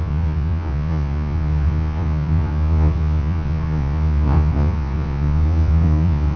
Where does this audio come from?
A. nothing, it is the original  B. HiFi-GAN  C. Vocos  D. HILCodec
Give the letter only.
C